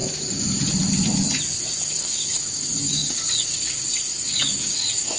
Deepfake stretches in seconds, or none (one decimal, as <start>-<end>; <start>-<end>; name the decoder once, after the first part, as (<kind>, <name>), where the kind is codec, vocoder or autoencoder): 1.6-5.2 (codec, DAC)